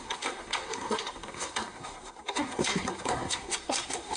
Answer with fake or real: fake